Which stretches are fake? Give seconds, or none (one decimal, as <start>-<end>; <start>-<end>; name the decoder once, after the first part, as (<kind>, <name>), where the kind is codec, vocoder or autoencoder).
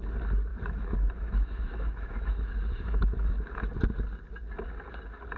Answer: 0.5-3.7 (autoencoder, DAC-VAE)